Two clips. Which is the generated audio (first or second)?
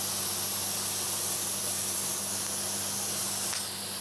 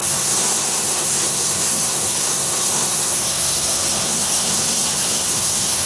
second